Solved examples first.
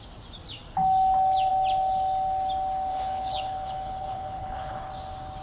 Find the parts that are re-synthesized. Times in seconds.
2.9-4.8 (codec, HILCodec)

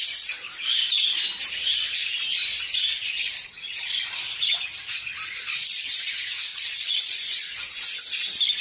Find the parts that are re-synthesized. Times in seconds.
2.9-5.9 (vocoder, Vocos); 6.5-7.6

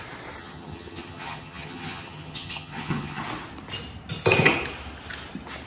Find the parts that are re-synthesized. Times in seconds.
0.4-3.2 (vocoder, HiFi-GAN)

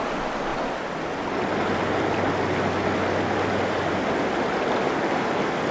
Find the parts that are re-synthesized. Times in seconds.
none

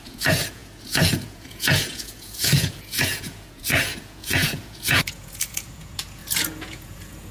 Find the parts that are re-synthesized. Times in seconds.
0.0-7.3 (vocoder, Vocos)

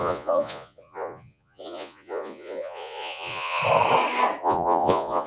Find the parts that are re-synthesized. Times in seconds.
0.0-3.6 (vocoder, Vocos); 4.4-5.3

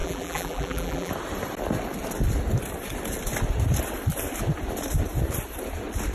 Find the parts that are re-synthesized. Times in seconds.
0.0-1.1 (vocoder, BigVGAN v2)

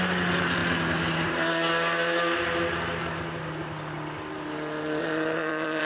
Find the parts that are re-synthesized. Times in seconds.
5.0-5.8 (vocoder, Vocos)